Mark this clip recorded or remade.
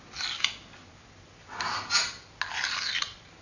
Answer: recorded